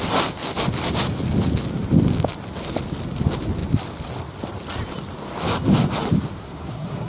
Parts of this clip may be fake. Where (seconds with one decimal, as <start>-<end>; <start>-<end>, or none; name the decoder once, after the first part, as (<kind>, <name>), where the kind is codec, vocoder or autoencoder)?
6.4-7.1 (codec, SNAC)